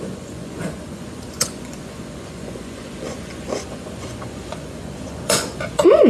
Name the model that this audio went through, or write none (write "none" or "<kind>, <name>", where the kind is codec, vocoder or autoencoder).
vocoder, Vocos